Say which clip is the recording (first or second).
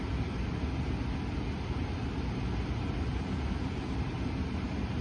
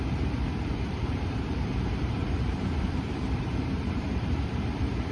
first